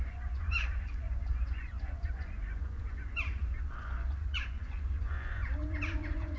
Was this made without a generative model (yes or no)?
no